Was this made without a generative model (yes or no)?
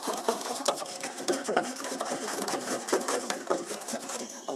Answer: no